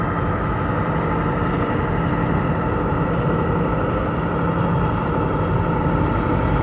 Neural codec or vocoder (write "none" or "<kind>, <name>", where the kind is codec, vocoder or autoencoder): none